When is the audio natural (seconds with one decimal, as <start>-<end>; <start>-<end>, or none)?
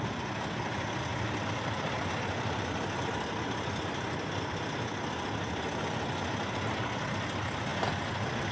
0.0-8.5